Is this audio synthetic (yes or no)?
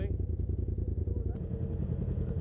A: no